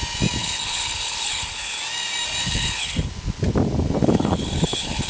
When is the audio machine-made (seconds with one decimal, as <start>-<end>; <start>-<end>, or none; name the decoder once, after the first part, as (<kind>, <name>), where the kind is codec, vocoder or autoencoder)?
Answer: 0.4-1.8 (codec, HILCodec); 2.4-3.1; 4.0-5.1